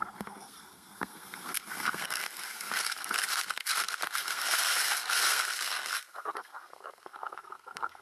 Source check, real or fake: fake